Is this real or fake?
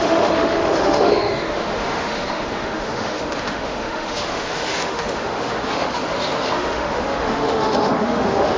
fake